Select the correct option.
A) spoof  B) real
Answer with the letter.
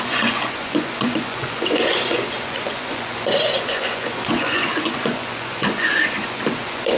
A